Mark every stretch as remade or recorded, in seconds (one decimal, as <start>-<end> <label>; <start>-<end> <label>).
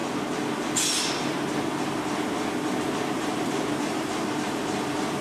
0.0-3.1 recorded; 3.1-5.2 remade